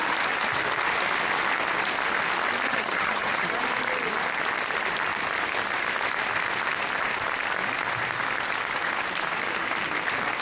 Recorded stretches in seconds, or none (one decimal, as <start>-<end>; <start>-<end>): 0.0-2.7; 3.6-10.4